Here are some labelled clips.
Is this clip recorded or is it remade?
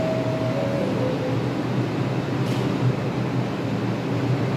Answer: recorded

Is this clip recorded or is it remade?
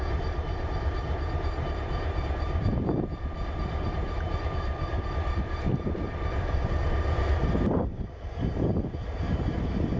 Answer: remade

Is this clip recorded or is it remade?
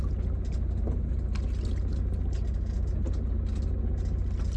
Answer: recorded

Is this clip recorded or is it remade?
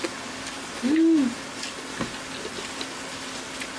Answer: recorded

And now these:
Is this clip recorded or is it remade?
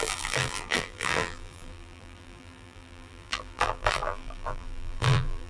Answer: remade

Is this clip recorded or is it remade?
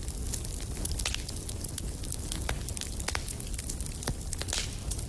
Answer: recorded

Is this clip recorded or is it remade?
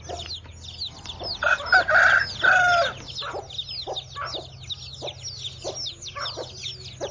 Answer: recorded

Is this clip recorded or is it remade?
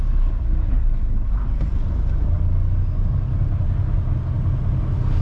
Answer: recorded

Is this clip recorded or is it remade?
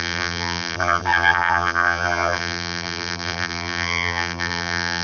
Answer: remade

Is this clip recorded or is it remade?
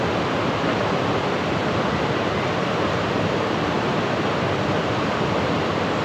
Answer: remade